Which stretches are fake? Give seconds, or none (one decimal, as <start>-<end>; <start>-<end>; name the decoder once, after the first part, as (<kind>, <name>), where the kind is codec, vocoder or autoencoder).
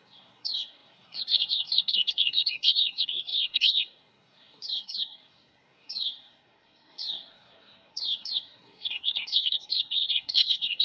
0.0-10.8 (codec, SNAC)